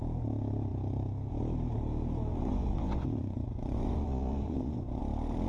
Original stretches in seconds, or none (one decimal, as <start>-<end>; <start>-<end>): 0.0-2.3; 5.0-5.5